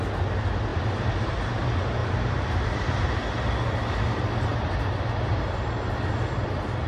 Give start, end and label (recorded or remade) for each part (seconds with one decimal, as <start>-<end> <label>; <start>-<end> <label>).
0.0-2.0 recorded; 2.0-3.1 remade; 3.1-4.5 recorded; 4.5-5.7 remade; 5.7-6.9 recorded